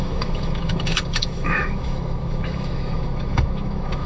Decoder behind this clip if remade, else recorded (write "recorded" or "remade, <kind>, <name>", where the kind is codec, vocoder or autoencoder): remade, autoencoder, DAC-VAE